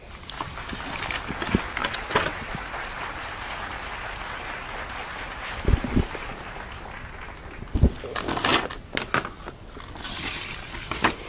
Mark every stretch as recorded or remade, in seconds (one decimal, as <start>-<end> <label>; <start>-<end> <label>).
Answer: 0.0-1.8 recorded; 1.8-2.5 remade; 2.5-11.3 recorded